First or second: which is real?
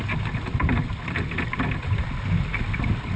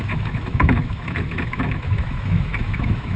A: first